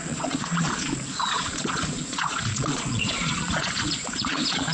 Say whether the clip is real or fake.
fake